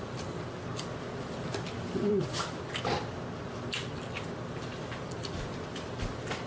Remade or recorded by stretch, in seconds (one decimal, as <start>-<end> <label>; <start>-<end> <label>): 0.0-6.5 remade